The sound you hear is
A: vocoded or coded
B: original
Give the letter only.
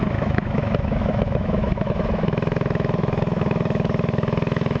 A